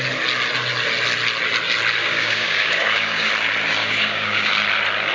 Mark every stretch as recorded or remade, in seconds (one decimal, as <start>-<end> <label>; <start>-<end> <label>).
0.0-2.0 recorded; 2.0-3.3 remade; 3.3-3.8 recorded; 3.8-4.5 remade; 4.5-5.1 recorded